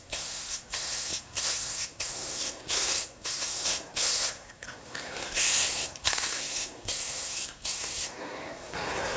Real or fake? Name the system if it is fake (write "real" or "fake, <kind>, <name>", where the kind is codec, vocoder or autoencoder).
fake, codec, SNAC